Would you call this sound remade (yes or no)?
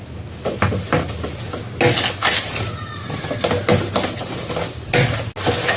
no